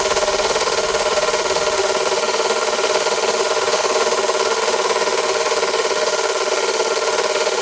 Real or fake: fake